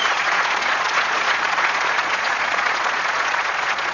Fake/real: fake